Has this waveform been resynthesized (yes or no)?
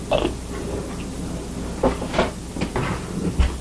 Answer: no